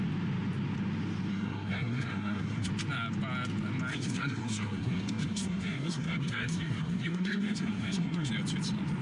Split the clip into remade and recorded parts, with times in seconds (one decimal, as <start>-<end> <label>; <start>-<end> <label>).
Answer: 0.0-1.3 recorded; 1.3-2.7 remade; 2.7-3.9 recorded; 3.9-8.3 remade; 8.3-9.0 recorded